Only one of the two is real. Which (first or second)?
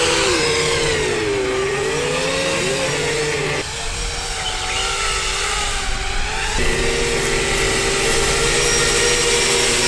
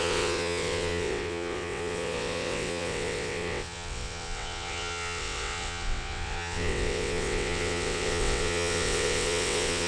first